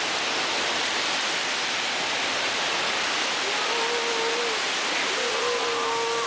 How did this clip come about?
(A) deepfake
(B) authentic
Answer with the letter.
B